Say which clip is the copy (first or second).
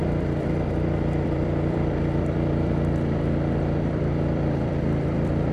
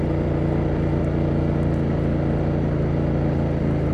first